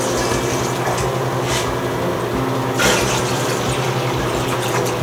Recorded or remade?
recorded